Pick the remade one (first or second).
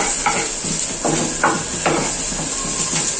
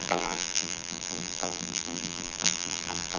second